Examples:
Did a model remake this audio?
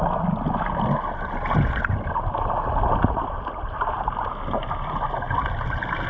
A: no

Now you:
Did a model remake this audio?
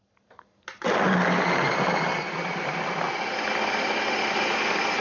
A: no